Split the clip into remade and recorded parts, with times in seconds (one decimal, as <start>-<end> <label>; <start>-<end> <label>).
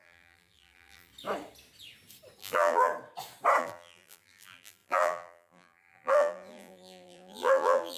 0.0-1.1 remade; 1.1-2.4 recorded; 2.4-2.9 remade; 2.9-3.6 recorded; 3.6-8.0 remade